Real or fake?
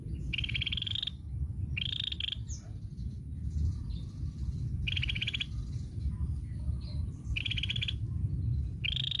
real